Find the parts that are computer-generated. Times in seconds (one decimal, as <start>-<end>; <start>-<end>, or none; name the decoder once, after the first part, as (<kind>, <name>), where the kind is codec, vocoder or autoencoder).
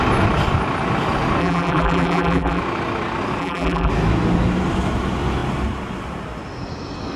1.4-2.6 (vocoder, BigVGAN v2); 3.4-3.9